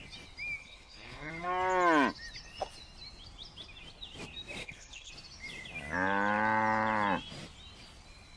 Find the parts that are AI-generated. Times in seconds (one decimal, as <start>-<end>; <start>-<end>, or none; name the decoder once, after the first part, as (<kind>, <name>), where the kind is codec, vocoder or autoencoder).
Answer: 0.6-1.3 (codec, HILCodec); 4.6-5.1